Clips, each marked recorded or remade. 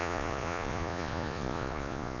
remade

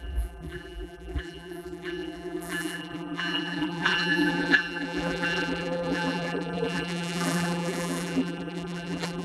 remade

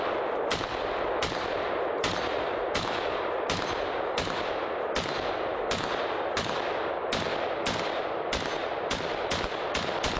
recorded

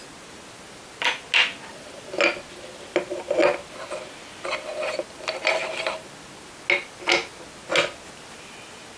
recorded